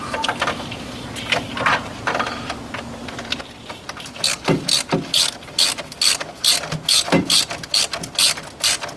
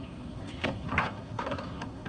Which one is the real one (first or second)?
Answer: first